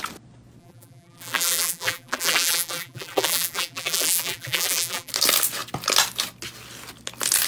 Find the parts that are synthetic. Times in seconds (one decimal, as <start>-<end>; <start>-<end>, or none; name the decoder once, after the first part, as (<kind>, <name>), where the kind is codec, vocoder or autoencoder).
0.6-5.1 (vocoder, BigVGAN v2)